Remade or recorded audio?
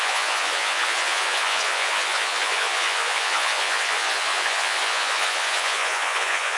remade